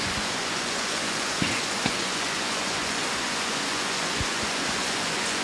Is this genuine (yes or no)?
no